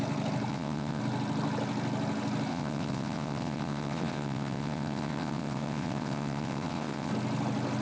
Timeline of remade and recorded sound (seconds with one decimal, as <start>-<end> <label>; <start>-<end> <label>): 0.0-0.5 recorded; 0.5-1.0 remade; 1.0-2.5 recorded; 2.5-7.1 remade; 7.1-7.8 recorded